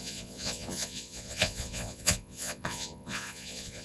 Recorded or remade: remade